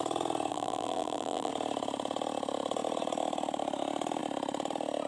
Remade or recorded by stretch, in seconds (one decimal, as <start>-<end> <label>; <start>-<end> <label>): 0.0-0.5 recorded; 0.5-1.5 remade; 1.5-5.1 recorded